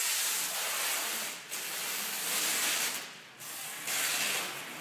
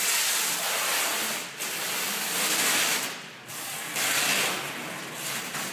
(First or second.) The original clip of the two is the first